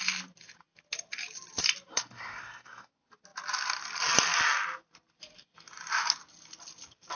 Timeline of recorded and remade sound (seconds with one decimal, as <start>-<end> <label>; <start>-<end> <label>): 0.0-1.9 recorded; 1.9-2.9 remade; 2.9-7.2 recorded